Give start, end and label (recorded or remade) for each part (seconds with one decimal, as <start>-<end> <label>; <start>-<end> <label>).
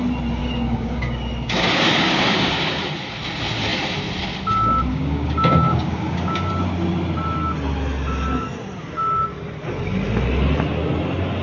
0.0-0.4 recorded; 0.4-2.8 remade; 2.8-4.9 recorded; 4.9-6.5 remade; 6.5-11.4 recorded